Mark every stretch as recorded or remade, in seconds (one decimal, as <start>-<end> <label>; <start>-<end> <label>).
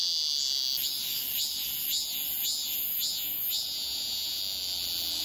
0.0-3.1 recorded; 3.1-4.4 remade; 4.4-5.2 recorded